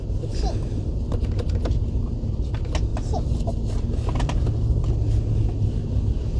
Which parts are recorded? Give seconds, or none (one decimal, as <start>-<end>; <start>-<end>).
0.0-6.4